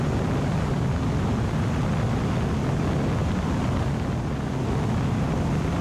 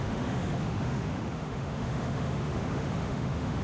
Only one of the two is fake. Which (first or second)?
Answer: second